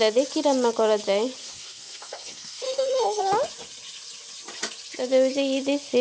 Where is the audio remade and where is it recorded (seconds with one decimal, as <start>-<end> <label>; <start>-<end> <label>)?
0.0-1.4 recorded; 1.4-3.2 remade; 3.2-6.0 recorded